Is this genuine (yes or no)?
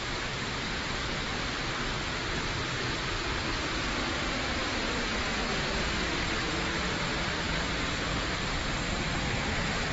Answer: yes